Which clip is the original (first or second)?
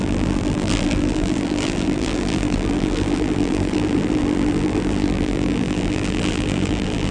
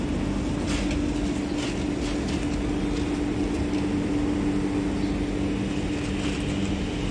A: second